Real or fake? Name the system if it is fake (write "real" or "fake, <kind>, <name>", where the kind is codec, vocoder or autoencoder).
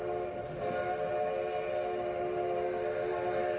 real